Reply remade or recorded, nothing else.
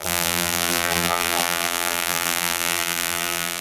remade